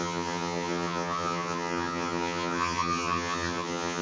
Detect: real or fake fake